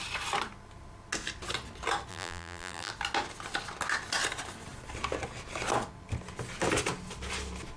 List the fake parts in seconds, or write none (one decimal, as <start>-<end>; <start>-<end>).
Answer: 2.1-2.9